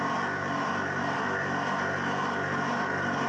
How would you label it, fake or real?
real